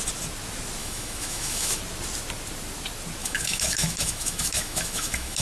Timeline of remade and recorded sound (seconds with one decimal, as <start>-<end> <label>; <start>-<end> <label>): 0.0-0.8 recorded; 0.8-1.8 remade; 1.8-3.2 recorded; 3.2-5.4 remade